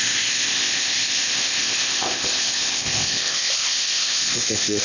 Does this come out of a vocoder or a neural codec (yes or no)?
yes